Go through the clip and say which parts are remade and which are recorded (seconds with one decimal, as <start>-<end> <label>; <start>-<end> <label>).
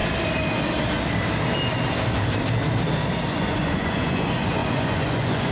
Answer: 0.0-3.3 recorded; 3.3-5.5 remade